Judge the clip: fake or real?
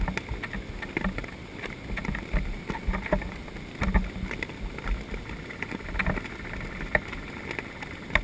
real